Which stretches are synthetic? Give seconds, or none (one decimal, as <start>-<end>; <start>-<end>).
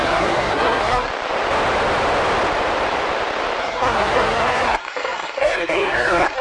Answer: 0.0-1.1; 3.6-6.4